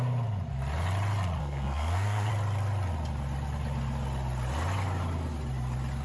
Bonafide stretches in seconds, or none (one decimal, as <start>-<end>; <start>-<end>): 0.0-1.4; 2.3-6.0